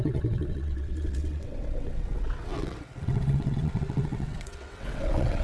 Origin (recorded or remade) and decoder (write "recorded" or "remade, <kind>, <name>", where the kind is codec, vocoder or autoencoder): remade, vocoder, WaveNeXt